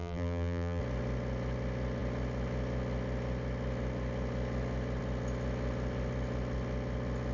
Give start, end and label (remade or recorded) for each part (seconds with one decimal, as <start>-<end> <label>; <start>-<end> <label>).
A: 0.0-0.8 remade; 0.8-7.3 recorded